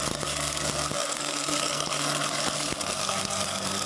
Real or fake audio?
fake